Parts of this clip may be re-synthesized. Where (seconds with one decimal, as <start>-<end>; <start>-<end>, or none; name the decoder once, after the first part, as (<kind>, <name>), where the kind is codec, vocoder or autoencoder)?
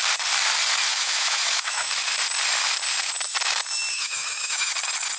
0.9-1.9 (autoencoder, DAC-VAE); 3.9-4.7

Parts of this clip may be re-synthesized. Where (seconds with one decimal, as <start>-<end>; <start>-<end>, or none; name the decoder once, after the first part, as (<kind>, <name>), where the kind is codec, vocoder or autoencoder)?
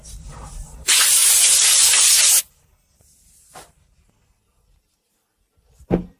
none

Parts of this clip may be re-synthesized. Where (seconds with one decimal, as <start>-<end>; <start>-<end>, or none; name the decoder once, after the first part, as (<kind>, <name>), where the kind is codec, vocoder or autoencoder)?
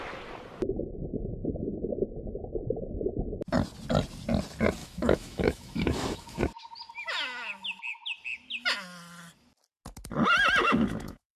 4.8-6.4 (autoencoder, DAC-VAE); 10.6-11.4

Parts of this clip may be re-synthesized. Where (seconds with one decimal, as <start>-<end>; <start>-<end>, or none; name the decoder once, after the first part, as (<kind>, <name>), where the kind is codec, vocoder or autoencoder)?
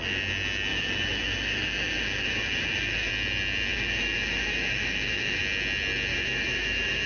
0.7-3.1 (autoencoder, DAC-VAE); 3.7-5.4; 6.1-7.1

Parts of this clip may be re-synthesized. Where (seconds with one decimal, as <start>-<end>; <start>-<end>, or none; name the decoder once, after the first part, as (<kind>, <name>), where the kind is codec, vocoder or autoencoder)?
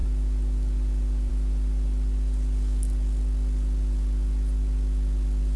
none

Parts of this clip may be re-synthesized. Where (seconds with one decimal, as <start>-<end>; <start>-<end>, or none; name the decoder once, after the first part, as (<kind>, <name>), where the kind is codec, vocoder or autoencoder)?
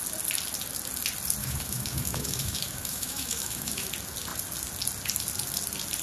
1.4-3.9 (autoencoder, DAC-VAE)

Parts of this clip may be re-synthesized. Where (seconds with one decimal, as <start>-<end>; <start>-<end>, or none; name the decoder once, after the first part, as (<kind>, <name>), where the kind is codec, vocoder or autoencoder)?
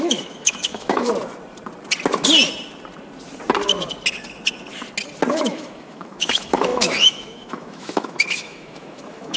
0.0-1.1 (autoencoder, DAC-VAE); 5.3-9.4